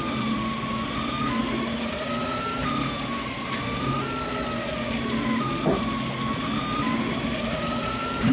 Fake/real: real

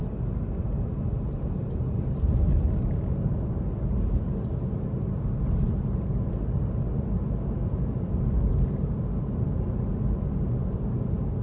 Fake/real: real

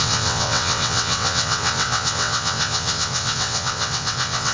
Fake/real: fake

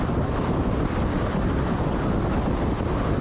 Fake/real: real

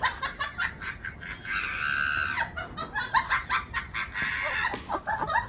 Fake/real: real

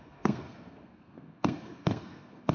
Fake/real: fake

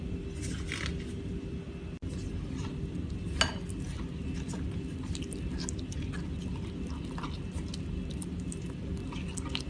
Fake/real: real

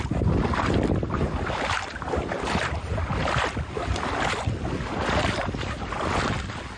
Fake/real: real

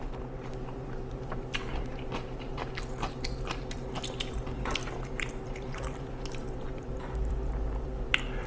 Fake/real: fake